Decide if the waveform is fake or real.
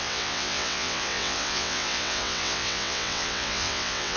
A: fake